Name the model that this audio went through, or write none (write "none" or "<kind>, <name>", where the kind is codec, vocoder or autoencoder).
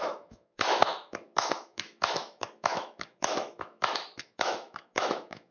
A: autoencoder, DAC-VAE